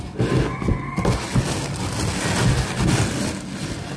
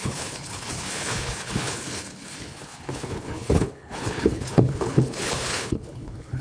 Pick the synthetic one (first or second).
second